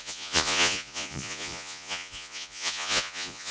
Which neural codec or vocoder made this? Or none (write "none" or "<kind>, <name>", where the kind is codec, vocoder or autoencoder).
vocoder, Vocos